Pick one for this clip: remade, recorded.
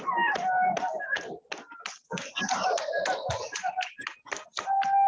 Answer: recorded